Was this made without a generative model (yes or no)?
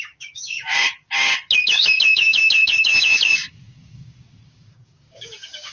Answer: no